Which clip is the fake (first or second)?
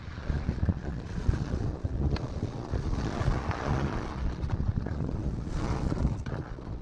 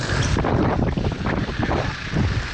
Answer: first